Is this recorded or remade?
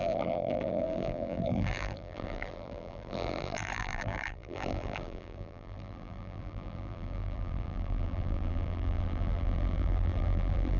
remade